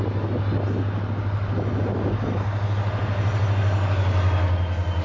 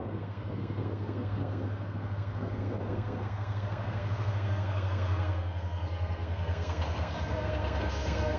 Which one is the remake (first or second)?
second